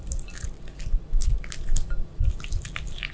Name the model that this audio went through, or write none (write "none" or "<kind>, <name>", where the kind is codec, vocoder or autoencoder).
none